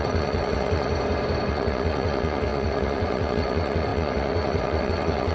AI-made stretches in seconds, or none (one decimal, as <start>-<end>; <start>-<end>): 0.0-0.9; 1.5-5.3